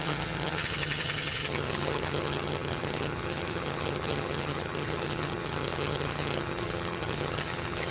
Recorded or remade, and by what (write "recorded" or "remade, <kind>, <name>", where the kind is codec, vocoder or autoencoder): remade, vocoder, HiFi-GAN